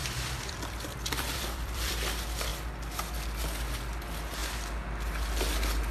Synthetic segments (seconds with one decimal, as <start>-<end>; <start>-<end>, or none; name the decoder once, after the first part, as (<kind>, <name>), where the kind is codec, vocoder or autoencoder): 0.0-1.9 (vocoder, BigVGAN v2)